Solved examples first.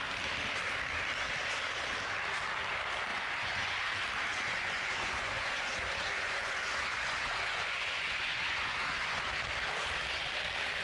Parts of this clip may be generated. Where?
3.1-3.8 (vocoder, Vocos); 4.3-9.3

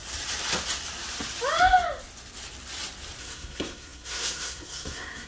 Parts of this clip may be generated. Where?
3.2-5.3 (codec, SNAC)

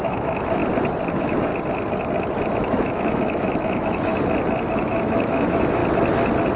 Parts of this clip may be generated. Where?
0.0-0.6 (autoencoder, DAC-VAE); 1.1-1.5; 2.4-4.1; 4.7-5.8

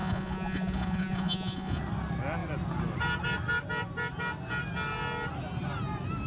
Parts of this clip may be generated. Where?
0.0-1.8 (vocoder, Vocos)

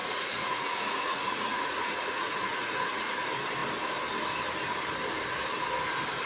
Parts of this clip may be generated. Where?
0.0-3.1 (vocoder, Vocos)

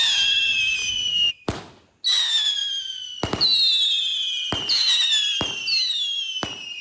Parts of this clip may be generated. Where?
none